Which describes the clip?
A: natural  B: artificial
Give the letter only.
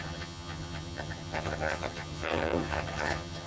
B